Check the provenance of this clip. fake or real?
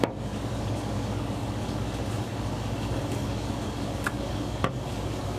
fake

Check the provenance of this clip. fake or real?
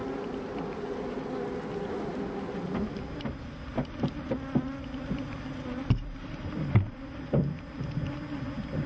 real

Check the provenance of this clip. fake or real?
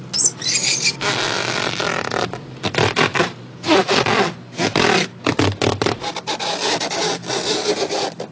real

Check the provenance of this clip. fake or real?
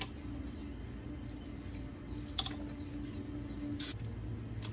real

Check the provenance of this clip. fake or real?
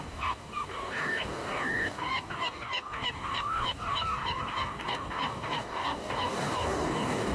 fake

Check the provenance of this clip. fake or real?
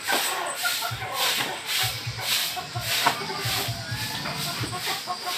real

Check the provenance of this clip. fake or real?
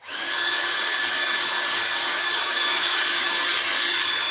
fake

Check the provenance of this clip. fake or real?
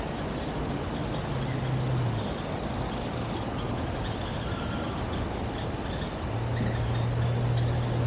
real